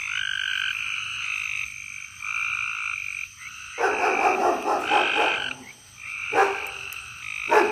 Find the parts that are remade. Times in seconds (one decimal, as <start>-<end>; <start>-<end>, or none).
none